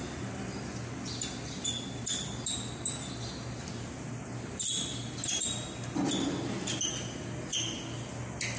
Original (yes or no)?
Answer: yes